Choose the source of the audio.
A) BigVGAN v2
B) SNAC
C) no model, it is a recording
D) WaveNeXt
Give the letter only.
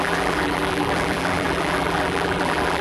A